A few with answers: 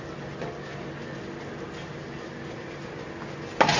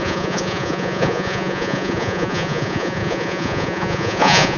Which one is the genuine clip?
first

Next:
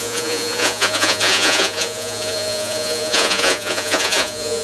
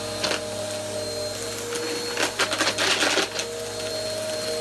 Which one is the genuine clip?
second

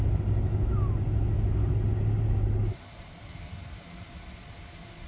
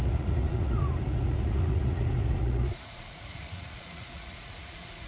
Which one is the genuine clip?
first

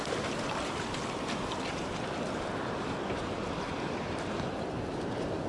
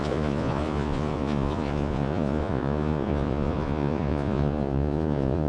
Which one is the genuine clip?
first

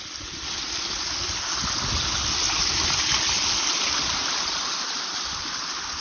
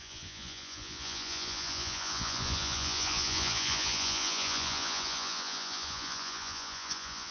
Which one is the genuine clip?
first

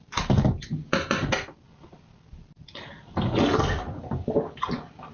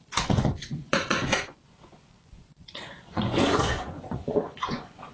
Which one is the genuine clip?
first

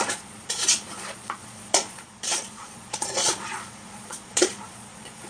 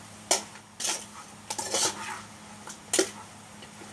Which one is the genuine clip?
second